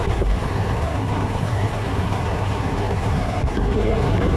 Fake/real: fake